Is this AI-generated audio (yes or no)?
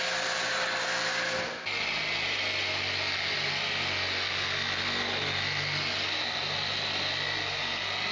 no